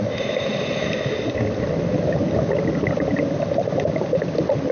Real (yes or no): yes